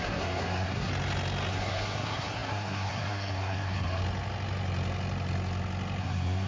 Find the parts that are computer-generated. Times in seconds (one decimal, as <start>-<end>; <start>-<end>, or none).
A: 0.0-0.9; 1.5-4.0; 6.0-6.5